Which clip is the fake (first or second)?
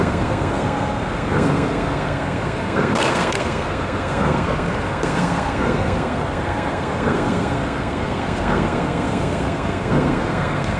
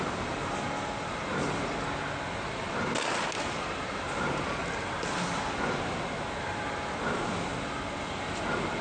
first